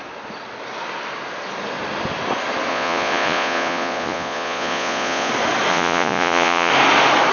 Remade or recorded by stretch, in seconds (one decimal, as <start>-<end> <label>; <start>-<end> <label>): 0.0-2.7 recorded; 2.7-5.3 remade; 5.3-5.7 recorded; 5.7-6.7 remade; 6.7-7.3 recorded